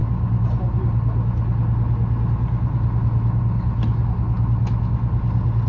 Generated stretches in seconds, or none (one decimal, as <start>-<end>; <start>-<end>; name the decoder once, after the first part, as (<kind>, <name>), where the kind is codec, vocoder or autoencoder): none